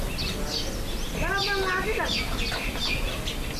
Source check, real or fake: real